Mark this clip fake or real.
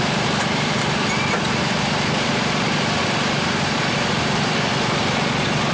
fake